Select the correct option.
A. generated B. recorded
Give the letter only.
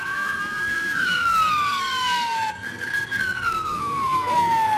A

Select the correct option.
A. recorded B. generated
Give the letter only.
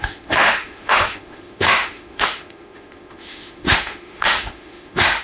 B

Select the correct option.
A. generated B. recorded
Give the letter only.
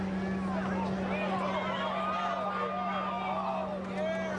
B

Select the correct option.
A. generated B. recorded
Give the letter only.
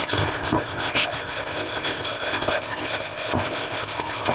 A